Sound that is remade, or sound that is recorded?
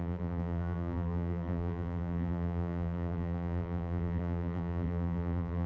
remade